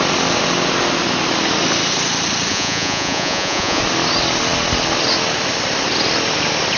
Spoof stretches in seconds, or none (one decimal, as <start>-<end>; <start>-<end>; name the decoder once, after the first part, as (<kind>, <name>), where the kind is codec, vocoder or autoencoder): 2.5-3.8 (vocoder, Vocos)